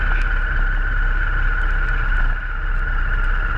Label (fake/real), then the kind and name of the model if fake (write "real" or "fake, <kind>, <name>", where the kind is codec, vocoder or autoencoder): real